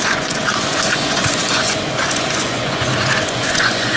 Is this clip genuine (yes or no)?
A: no